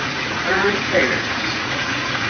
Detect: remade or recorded remade